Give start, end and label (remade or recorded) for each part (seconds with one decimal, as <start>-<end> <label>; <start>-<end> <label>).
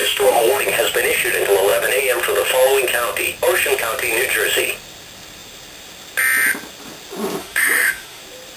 0.0-0.6 remade; 0.6-7.4 recorded; 7.4-8.2 remade; 8.2-8.6 recorded